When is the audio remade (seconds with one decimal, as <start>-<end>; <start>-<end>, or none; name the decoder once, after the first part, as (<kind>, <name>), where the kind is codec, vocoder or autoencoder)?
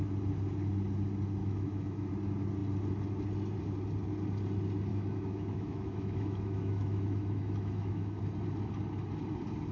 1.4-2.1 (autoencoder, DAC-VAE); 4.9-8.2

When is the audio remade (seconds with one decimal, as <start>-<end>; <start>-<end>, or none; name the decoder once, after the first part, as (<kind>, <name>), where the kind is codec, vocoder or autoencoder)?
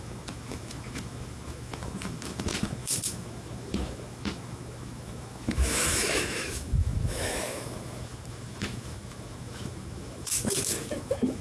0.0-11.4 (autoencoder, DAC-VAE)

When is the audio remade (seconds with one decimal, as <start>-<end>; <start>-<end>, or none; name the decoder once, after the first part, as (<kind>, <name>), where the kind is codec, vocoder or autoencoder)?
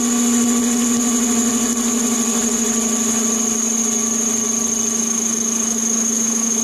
5.0-6.6 (autoencoder, DAC-VAE)